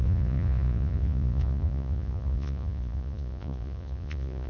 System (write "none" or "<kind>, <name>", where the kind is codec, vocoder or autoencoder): vocoder, Vocos